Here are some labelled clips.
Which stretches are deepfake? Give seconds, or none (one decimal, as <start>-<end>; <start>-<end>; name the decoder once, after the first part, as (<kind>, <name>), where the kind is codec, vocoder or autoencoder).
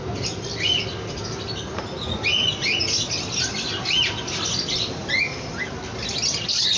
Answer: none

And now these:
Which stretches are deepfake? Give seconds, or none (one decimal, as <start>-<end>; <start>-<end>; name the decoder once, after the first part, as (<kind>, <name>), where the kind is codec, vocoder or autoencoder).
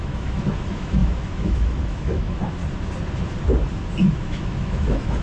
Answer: 0.0-2.6 (autoencoder, DAC-VAE); 4.1-5.2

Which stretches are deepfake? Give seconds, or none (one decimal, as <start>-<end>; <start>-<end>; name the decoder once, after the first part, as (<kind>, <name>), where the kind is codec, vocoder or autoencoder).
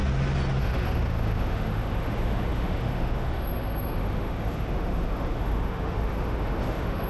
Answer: 0.6-7.1 (autoencoder, DAC-VAE)